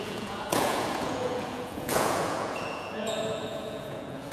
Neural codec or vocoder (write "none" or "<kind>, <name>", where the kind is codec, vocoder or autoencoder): vocoder, Vocos